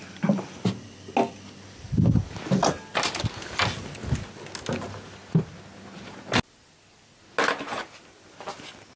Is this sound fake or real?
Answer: real